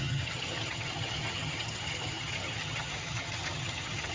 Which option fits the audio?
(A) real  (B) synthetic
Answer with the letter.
B